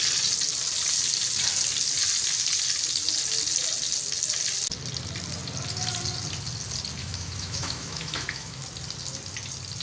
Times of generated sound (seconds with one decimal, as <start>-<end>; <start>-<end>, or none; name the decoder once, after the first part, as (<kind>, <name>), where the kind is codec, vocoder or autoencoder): 7.0-8.6 (autoencoder, DAC-VAE)